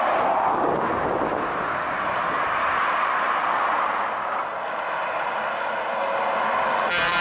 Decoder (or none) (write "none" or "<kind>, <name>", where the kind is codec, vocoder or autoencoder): none